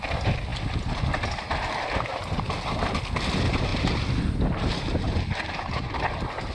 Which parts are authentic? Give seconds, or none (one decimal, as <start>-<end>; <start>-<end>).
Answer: 0.0-6.5